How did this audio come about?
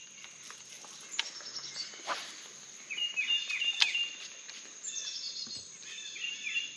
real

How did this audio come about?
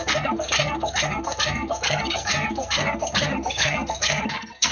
fake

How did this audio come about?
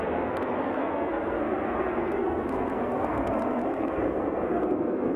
fake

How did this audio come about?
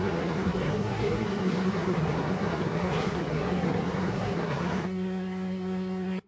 fake